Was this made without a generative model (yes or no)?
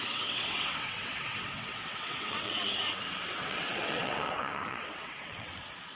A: no